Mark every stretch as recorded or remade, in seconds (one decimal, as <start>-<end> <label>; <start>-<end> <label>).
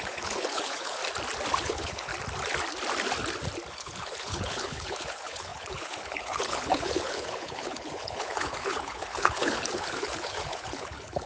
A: 0.0-1.0 remade; 1.0-1.6 recorded; 1.6-2.1 remade; 2.1-3.7 recorded; 3.7-11.3 remade